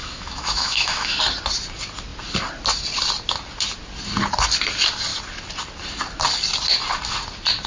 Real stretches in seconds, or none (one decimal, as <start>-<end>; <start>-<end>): 1.2-7.7